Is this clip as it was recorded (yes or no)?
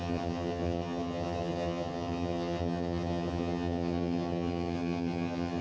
no